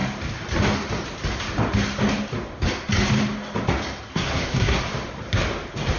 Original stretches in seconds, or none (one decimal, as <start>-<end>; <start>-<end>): 0.0-4.1; 4.8-6.0